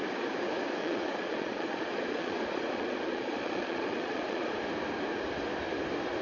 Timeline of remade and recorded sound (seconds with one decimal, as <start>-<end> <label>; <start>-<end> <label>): 0.0-0.8 recorded; 0.8-4.5 remade; 4.5-6.2 recorded